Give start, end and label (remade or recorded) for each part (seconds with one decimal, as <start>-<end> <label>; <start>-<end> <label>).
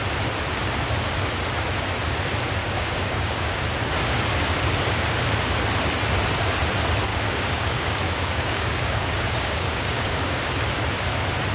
0.0-2.6 recorded; 2.6-3.6 remade; 3.6-7.1 recorded; 7.1-10.4 remade; 10.4-11.5 recorded